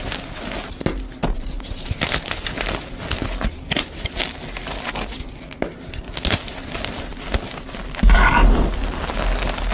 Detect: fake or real real